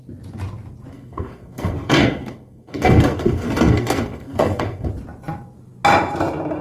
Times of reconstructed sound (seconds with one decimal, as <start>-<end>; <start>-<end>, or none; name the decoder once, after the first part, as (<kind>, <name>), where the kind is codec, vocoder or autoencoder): 0.9-4.9 (codec, SNAC)